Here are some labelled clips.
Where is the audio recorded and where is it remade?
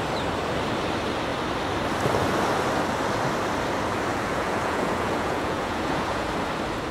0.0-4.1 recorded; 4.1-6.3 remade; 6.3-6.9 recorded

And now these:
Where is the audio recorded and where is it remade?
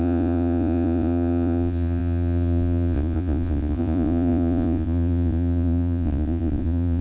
0.0-7.0 remade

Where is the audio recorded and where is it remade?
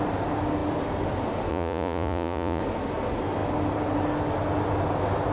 0.0-1.5 recorded; 1.5-2.6 remade; 2.6-5.3 recorded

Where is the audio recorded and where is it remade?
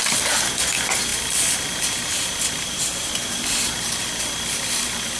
0.0-5.2 recorded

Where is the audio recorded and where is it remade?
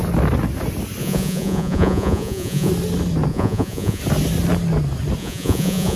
0.0-1.0 recorded; 1.0-2.7 remade; 2.7-3.3 recorded; 3.3-4.0 remade; 4.0-5.2 recorded; 5.2-6.0 remade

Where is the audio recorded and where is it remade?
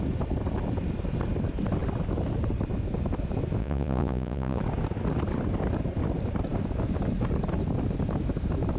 0.0-3.6 recorded; 3.6-4.6 remade; 4.6-8.8 recorded